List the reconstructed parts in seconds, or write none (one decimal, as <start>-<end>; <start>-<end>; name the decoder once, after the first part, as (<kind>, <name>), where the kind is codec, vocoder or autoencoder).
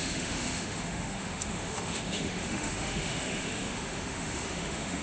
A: 0.0-5.0 (autoencoder, DAC-VAE)